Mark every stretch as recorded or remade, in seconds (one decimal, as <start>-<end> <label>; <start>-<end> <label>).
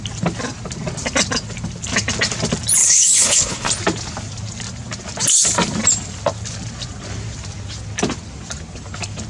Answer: 0.0-2.8 recorded; 2.8-3.7 remade; 3.7-9.3 recorded